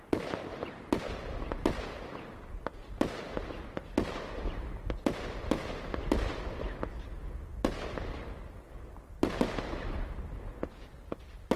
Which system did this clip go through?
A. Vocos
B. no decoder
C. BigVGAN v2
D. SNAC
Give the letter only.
B